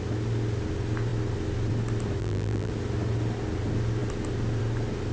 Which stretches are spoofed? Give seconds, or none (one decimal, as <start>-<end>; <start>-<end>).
2.2-2.7